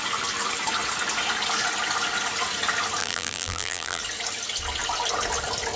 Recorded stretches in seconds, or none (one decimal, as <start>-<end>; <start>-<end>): 0.0-3.0; 4.0-5.8